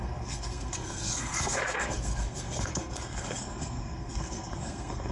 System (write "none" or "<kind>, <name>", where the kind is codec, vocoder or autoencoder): codec, SNAC